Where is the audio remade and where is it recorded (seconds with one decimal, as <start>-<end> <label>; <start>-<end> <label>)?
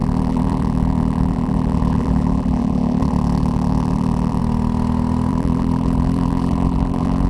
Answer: 0.0-4.4 remade; 4.4-5.3 recorded; 5.3-7.3 remade